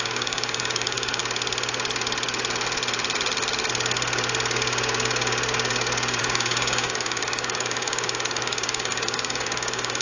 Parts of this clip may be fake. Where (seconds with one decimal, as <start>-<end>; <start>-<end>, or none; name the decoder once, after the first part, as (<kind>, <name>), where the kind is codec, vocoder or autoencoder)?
0.0-1.2 (codec, DAC); 6.2-10.0